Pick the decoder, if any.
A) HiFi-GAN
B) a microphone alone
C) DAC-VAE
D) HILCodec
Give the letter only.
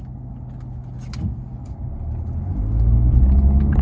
B